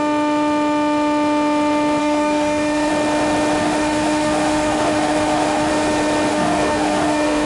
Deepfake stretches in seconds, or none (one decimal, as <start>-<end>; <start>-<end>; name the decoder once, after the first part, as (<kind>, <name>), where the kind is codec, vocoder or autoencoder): 2.0-2.9 (autoencoder, DAC-VAE); 3.6-5.7; 6.3-7.5